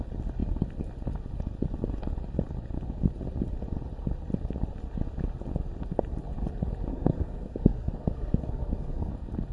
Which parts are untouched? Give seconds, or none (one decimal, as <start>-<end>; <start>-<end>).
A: 0.0-6.9; 9.1-9.5